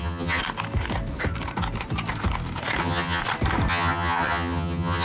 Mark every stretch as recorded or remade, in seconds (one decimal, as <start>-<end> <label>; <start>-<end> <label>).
0.0-0.4 remade; 0.4-2.8 recorded; 2.8-3.2 remade; 3.2-3.7 recorded; 3.7-5.0 remade